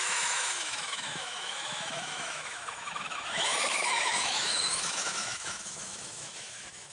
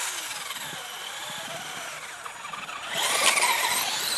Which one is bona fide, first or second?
second